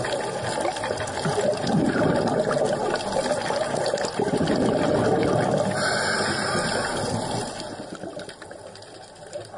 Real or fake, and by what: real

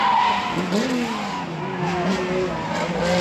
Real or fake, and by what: real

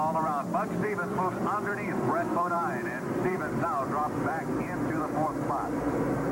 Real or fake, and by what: fake, vocoder, BigVGAN v2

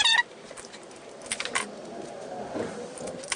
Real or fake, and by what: real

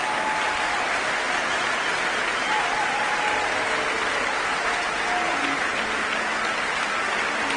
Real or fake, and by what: real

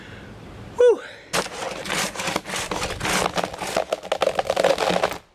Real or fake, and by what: real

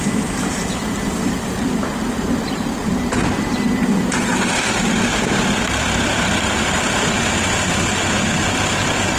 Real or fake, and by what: fake, vocoder, BigVGAN v2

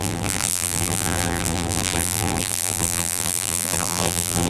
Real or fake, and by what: fake, vocoder, BigVGAN v2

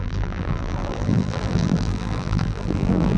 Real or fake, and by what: fake, vocoder, BigVGAN v2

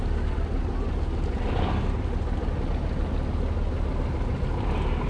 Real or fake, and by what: real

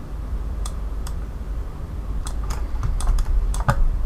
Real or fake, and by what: fake, vocoder, BigVGAN v2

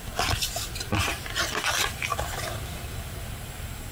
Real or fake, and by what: real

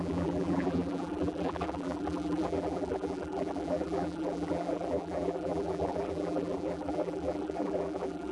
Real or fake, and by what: fake, vocoder, BigVGAN v2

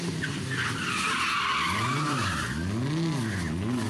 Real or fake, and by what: real